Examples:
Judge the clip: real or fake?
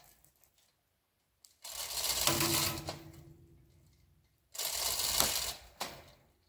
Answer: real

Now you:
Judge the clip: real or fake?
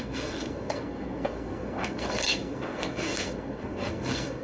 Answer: fake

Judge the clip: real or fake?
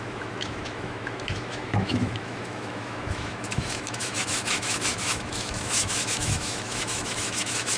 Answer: fake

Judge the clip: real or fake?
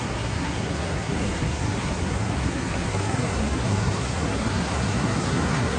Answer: fake